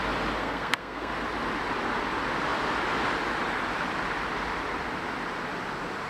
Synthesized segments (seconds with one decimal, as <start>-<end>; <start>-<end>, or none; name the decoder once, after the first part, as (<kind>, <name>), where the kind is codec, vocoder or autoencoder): 0.4-1.1 (codec, SNAC)